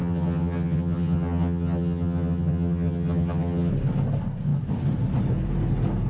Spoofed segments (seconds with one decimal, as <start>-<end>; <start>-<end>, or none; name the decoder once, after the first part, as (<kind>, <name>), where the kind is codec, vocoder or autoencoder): 0.0-3.7 (vocoder, HiFi-GAN)